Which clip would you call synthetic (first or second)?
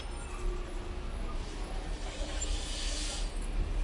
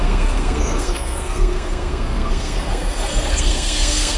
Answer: second